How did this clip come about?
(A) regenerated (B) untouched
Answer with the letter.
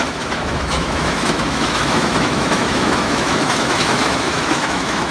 A